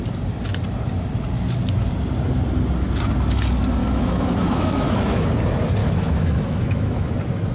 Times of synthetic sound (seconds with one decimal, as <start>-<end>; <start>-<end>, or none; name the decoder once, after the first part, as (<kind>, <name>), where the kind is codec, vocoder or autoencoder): 3.8-5.3 (autoencoder, DAC-VAE); 5.8-7.1